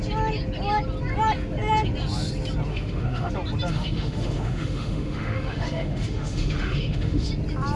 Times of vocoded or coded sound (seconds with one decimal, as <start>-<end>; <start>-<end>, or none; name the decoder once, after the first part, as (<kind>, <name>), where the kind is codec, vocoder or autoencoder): 2.7-3.3 (autoencoder, DAC-VAE); 3.7-7.3